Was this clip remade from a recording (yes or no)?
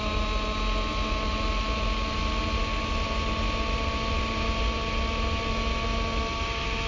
no